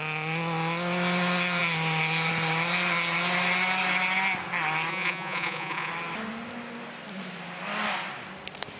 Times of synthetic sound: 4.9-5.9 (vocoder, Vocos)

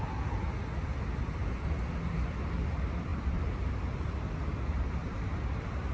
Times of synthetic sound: 3.1-3.7 (vocoder, BigVGAN v2); 5.0-5.9

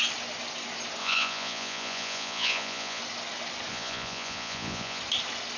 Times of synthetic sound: 1.0-3.0 (vocoder, Vocos); 3.7-5.0

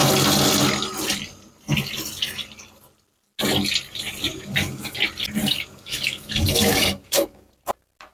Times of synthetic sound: 4.3-5.0 (codec, DAC); 5.4-7.5